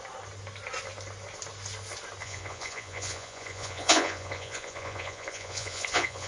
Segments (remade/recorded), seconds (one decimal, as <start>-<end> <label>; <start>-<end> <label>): 0.0-2.2 recorded; 2.2-6.3 remade